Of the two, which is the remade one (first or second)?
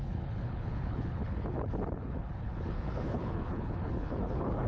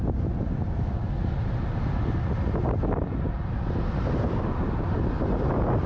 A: first